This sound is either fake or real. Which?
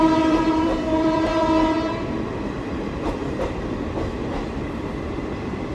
fake